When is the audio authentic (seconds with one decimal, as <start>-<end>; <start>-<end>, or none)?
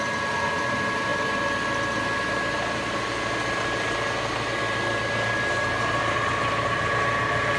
0.0-7.6